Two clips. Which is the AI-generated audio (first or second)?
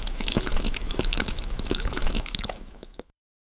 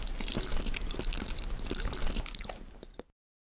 first